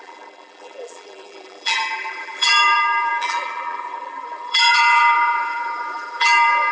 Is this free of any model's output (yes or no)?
no